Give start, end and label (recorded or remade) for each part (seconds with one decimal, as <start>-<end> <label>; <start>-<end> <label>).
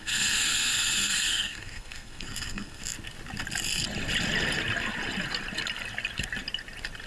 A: 0.0-2.8 remade; 2.8-7.1 recorded